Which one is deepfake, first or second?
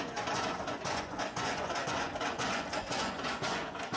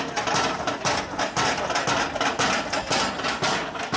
first